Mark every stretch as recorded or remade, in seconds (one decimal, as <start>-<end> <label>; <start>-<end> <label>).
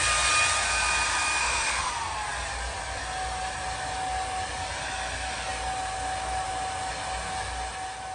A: 0.0-1.4 recorded; 1.4-1.9 remade; 1.9-8.1 recorded